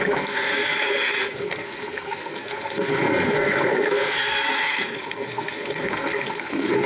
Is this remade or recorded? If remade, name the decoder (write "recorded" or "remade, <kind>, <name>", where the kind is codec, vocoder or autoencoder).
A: remade, codec, SNAC